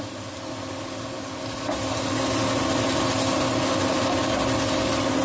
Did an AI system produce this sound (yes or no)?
no